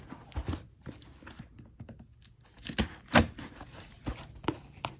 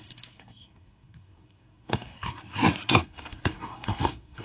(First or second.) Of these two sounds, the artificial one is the second